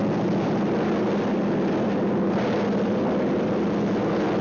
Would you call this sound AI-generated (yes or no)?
no